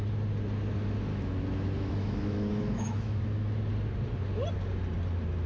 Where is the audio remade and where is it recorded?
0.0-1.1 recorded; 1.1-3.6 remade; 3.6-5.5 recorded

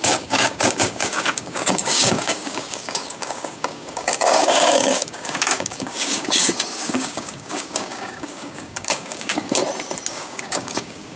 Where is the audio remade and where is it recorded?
0.0-9.6 remade; 9.6-10.1 recorded; 10.1-11.2 remade

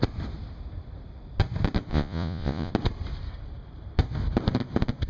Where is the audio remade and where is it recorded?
0.0-1.9 recorded; 1.9-2.7 remade; 2.7-5.1 recorded

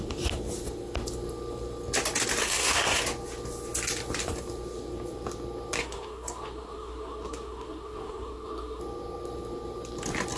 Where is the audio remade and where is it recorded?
0.0-2.4 recorded; 2.4-3.0 remade; 3.0-5.8 recorded; 5.8-8.8 remade; 8.8-10.4 recorded

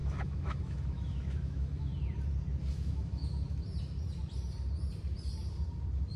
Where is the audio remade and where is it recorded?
0.0-1.9 remade; 1.9-2.7 recorded; 2.7-3.2 remade; 3.2-6.2 recorded